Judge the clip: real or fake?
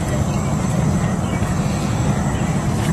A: real